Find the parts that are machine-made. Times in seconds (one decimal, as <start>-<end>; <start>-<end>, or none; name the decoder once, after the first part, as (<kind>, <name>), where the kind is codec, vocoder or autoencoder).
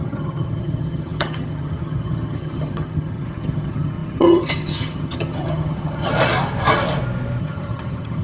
0.0-6.1 (vocoder, HiFi-GAN); 7.4-8.2